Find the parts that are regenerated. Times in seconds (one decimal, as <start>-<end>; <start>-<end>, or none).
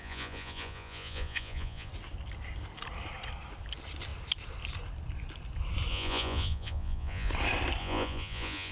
0.0-1.9; 5.9-7.3; 7.8-8.7